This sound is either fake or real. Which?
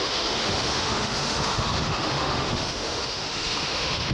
fake